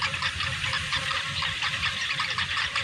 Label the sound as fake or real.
real